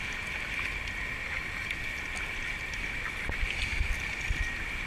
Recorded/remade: recorded